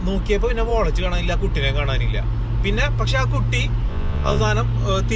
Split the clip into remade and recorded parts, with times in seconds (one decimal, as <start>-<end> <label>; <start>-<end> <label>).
0.0-3.9 recorded; 3.9-4.4 remade; 4.4-5.2 recorded